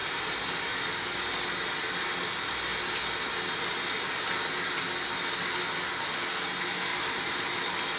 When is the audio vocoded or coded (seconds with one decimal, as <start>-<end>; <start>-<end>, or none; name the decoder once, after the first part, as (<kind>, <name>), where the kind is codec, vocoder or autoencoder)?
0.0-0.8 (vocoder, BigVGAN v2); 6.9-7.5